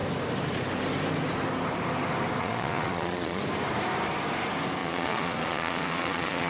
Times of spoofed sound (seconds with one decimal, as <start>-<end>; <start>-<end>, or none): 2.4-3.4; 4.8-6.5